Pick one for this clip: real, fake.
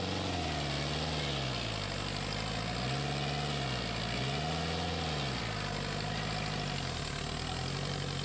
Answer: real